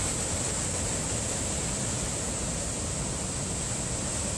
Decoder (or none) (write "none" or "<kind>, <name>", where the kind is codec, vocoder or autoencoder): none